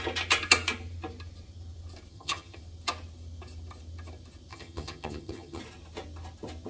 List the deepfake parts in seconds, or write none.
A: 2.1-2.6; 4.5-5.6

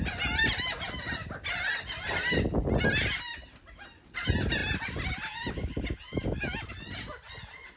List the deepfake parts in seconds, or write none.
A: none

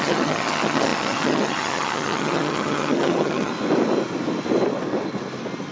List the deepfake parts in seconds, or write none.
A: 0.0-3.5

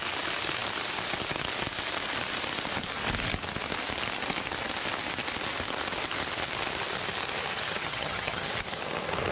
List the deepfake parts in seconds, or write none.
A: 7.8-8.5